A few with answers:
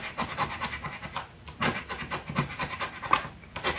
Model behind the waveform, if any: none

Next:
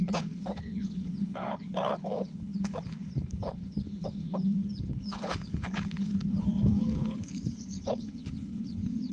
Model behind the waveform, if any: codec, HILCodec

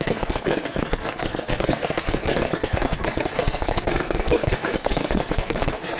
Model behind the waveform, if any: codec, SNAC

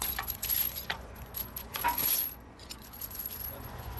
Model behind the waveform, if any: vocoder, Vocos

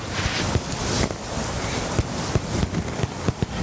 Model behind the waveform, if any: none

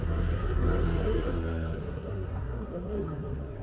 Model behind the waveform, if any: codec, SNAC